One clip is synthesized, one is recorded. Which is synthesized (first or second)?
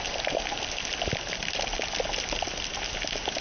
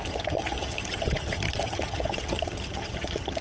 second